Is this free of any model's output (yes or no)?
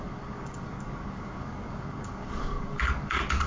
no